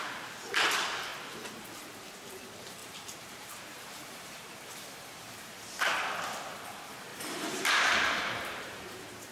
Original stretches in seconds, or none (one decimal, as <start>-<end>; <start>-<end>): 0.0-2.8; 5.8-7.1